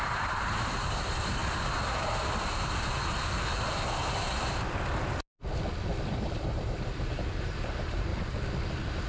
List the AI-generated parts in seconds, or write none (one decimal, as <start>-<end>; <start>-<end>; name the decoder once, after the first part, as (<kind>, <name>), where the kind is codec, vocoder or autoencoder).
0.0-1.4 (vocoder, BigVGAN v2); 6.0-8.1